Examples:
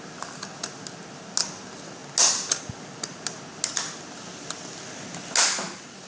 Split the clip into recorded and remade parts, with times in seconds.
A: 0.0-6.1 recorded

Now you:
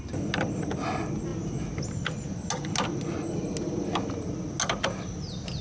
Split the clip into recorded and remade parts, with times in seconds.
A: 0.0-5.6 recorded

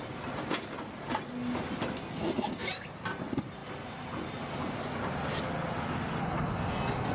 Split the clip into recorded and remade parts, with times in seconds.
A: 0.0-7.1 recorded

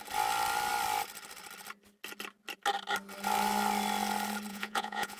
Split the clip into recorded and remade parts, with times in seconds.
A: 0.0-4.5 recorded; 4.5-5.2 remade

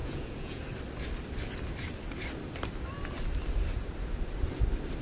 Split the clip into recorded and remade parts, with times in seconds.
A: 0.0-0.6 remade; 0.6-5.0 recorded